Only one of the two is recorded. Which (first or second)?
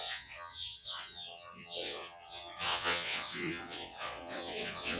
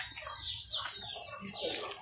second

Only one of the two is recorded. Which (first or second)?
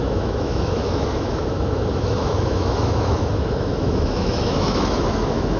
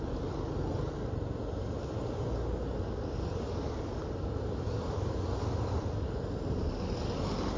second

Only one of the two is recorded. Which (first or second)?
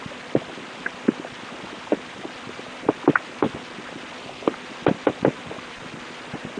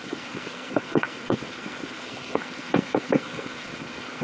first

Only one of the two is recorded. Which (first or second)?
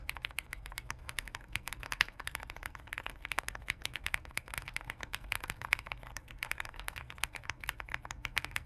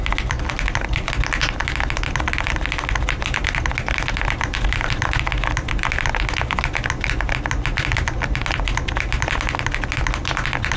second